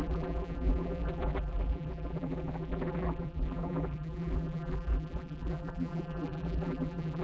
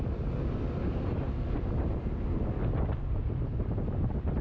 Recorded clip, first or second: second